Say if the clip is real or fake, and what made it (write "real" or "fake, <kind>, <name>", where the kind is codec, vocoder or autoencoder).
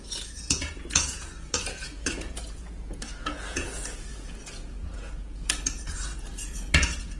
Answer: fake, vocoder, Vocos